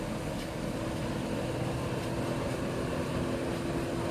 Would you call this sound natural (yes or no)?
yes